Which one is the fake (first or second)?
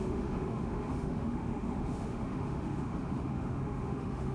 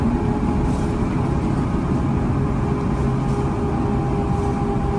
first